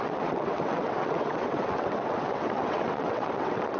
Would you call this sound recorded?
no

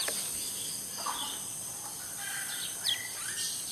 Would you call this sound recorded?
yes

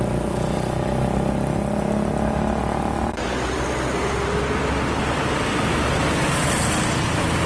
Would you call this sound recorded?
yes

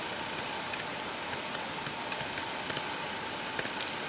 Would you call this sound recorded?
yes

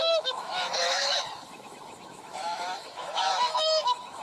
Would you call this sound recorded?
no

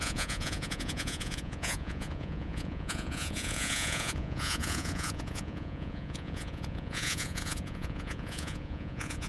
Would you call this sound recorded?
no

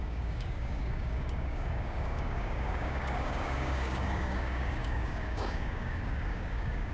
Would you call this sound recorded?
no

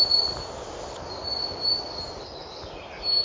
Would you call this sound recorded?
yes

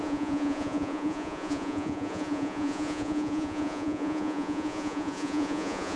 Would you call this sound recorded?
no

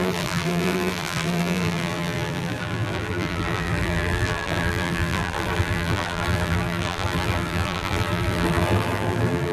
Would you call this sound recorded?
no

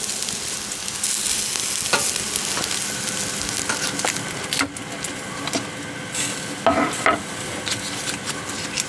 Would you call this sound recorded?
yes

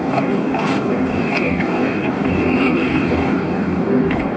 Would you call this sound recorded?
no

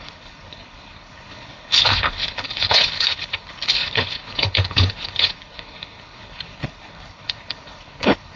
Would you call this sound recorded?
no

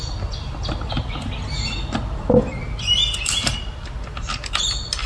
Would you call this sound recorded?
yes